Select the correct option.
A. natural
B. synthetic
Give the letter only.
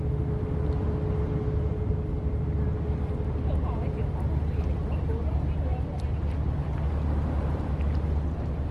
A